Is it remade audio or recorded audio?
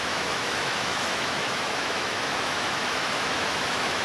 remade